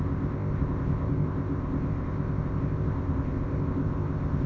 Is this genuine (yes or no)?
no